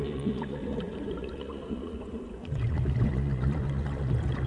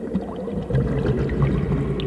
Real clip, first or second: second